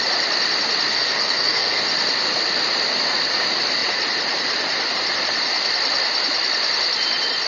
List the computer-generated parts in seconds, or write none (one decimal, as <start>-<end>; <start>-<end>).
0.9-1.8